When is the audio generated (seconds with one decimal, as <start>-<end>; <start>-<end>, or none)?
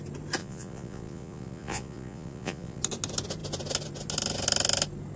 0.4-2.8